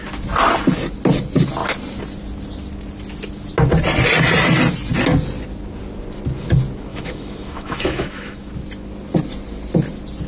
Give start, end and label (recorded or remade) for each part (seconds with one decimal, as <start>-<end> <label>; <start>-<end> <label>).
0.0-6.9 recorded; 6.9-8.5 remade; 8.5-10.3 recorded